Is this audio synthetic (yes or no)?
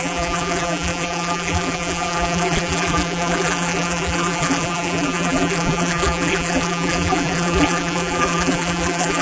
yes